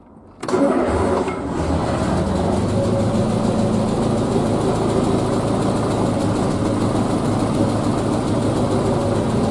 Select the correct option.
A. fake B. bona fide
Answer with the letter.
B